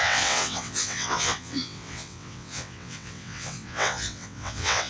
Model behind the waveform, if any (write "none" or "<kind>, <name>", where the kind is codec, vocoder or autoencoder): vocoder, WaveNeXt